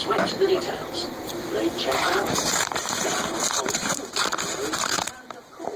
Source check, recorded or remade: remade